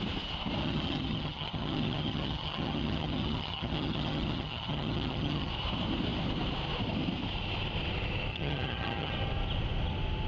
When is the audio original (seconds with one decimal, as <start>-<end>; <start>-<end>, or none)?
0.0-0.6; 5.5-8.3; 9.1-10.3